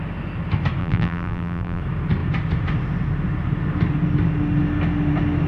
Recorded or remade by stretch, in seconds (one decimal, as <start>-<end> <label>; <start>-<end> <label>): 0.0-0.8 recorded; 0.8-1.8 remade; 1.8-5.5 recorded